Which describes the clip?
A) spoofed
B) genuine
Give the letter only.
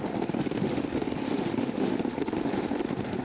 A